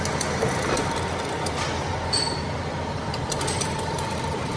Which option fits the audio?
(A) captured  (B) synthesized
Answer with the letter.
A